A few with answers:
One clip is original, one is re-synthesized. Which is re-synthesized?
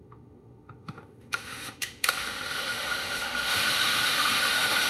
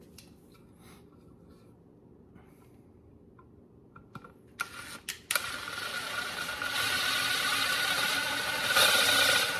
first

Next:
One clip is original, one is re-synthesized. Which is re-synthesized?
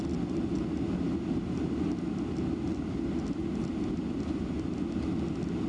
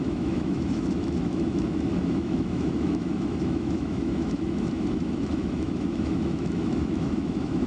second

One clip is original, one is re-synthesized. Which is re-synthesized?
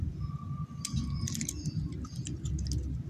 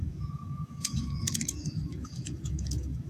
second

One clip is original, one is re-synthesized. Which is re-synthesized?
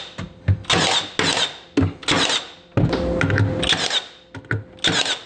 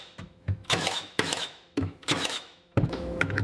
second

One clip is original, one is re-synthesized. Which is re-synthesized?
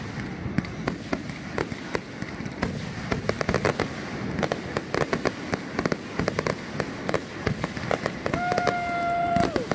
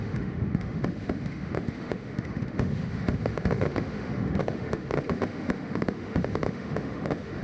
second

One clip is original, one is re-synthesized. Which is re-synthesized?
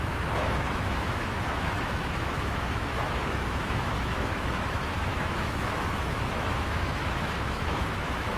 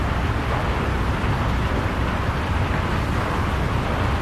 first